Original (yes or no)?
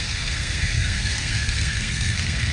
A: no